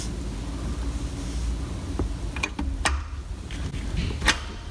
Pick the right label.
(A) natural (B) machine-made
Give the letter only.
A